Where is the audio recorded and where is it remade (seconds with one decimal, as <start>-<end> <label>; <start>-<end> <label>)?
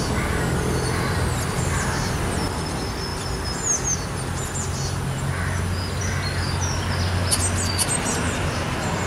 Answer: 0.0-9.1 recorded